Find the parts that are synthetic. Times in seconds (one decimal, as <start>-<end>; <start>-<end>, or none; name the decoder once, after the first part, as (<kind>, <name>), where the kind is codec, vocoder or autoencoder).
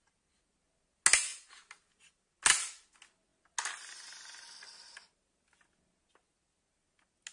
none